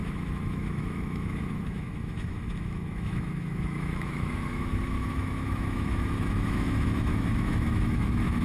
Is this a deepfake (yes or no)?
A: yes